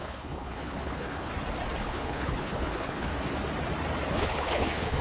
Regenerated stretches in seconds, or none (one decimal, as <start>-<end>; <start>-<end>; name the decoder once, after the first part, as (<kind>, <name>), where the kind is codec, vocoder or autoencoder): 0.0-1.3 (codec, HILCodec); 1.8-3.1; 4.1-5.0